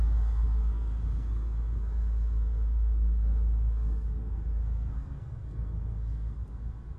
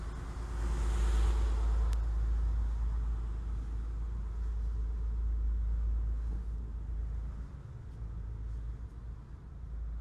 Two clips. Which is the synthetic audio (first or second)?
first